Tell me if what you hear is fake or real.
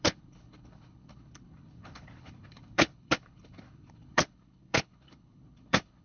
fake